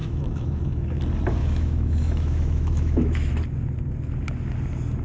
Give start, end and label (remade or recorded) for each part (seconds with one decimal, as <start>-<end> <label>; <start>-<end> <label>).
0.0-1.0 remade; 1.0-1.4 recorded; 1.4-3.3 remade; 3.3-5.0 recorded